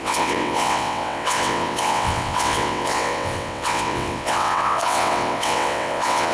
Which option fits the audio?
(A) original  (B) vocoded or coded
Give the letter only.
B